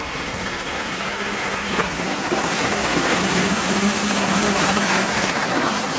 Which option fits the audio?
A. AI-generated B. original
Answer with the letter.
A